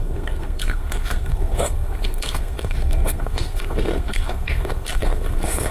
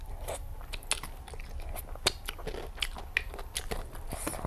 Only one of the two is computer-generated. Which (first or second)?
first